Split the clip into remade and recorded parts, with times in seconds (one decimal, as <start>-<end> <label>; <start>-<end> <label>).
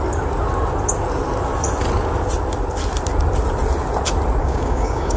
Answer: 0.0-4.4 recorded; 4.4-5.2 remade